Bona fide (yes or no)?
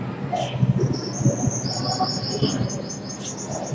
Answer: yes